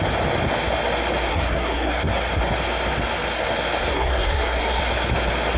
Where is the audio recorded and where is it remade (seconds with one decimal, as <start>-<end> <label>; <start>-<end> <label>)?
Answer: 0.0-1.3 recorded; 1.3-2.0 remade; 2.0-3.9 recorded; 3.9-4.8 remade; 4.8-5.6 recorded